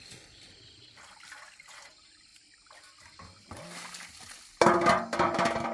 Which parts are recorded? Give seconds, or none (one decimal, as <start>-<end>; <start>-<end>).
0.0-5.7

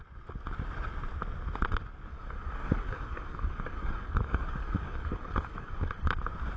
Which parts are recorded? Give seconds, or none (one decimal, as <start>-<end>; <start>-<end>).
0.0-2.1; 6.1-6.6

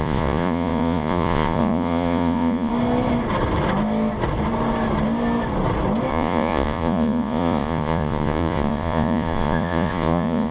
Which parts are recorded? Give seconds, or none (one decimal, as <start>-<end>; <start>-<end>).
2.7-6.1

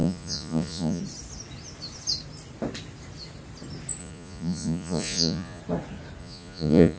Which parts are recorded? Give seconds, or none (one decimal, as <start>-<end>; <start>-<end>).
1.0-4.0; 5.6-6.2

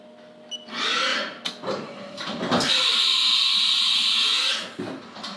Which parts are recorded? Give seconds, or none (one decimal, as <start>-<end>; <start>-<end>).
0.0-5.4

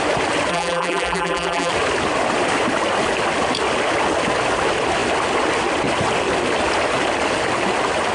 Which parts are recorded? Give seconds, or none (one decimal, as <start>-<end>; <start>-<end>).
0.0-0.5; 1.7-8.1

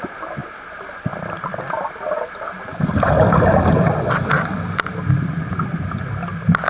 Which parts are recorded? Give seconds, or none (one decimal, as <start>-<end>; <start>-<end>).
0.0-6.7